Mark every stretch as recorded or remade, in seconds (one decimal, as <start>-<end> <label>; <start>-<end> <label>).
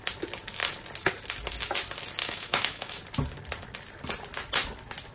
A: 0.0-2.2 recorded; 2.2-3.0 remade; 3.0-5.1 recorded